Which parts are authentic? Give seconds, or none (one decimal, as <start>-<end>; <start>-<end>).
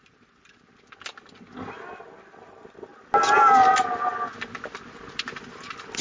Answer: 0.0-6.0